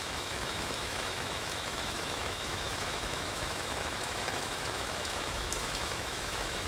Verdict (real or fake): fake